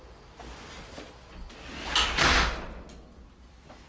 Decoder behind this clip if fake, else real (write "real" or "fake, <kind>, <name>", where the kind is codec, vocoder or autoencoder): real